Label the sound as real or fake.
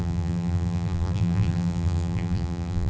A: fake